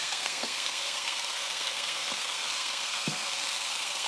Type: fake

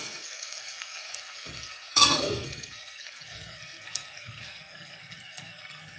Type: fake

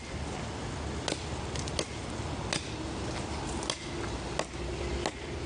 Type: real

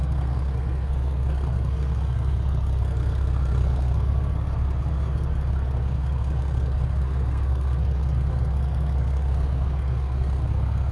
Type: fake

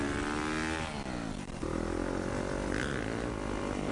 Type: real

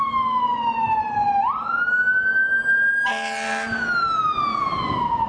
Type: real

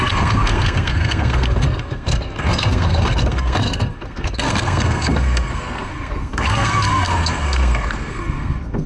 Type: fake